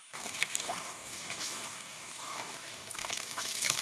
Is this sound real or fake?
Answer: fake